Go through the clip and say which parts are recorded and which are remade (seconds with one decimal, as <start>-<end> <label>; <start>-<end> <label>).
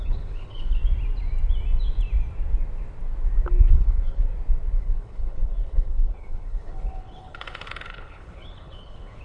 0.0-0.8 remade; 0.8-3.7 recorded; 3.7-4.3 remade; 4.3-4.8 recorded; 4.8-9.2 remade